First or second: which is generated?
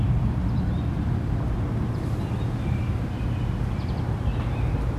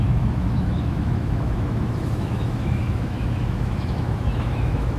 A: second